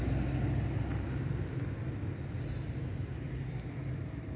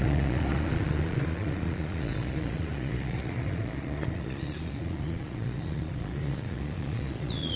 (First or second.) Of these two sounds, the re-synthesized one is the second